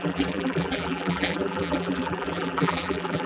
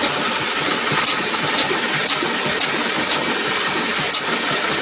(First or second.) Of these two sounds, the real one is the second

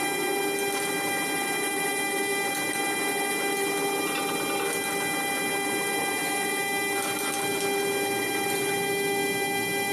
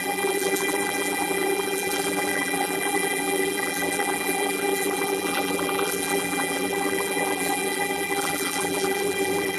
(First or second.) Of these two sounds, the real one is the first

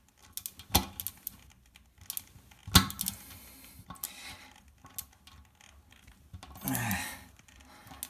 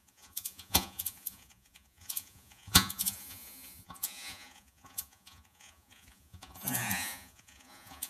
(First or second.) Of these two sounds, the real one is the first